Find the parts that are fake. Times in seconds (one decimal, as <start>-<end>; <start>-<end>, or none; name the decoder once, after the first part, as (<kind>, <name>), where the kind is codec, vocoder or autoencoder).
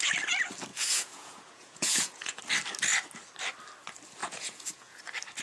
0.7-2.4 (vocoder, Vocos); 4.2-5.0